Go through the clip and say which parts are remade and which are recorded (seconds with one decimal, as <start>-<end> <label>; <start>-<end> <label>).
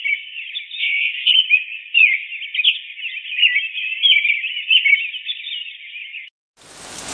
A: 0.0-0.8 recorded; 0.8-1.3 remade; 1.3-7.1 recorded